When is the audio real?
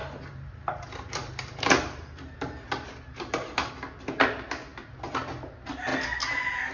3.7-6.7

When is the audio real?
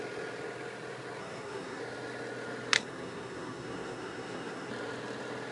0.0-1.2; 1.8-2.8; 4.7-5.5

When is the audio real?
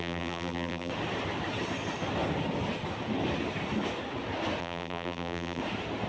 0.9-4.6; 5.6-6.1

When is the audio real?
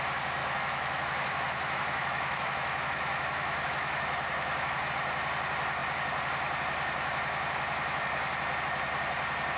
0.0-0.4; 4.9-9.6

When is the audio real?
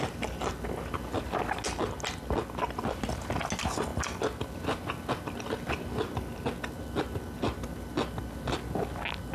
0.0-9.3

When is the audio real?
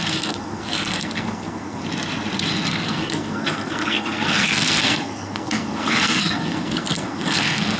1.8-2.7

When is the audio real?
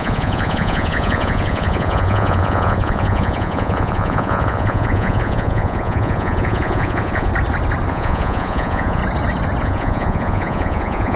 7.3-7.9; 9.0-9.6